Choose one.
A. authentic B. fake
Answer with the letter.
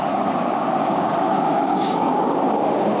B